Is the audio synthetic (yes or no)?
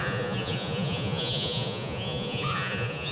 yes